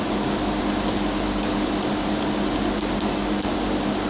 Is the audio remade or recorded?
recorded